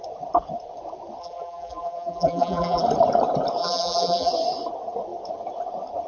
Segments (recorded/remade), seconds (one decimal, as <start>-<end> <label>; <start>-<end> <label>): 0.0-1.2 recorded; 1.2-2.8 remade; 2.8-3.6 recorded; 3.6-4.3 remade; 4.3-6.1 recorded